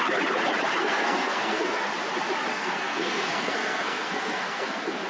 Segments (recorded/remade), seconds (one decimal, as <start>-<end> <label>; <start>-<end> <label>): 0.0-0.8 recorded; 0.8-1.9 remade; 1.9-2.5 recorded; 2.5-5.1 remade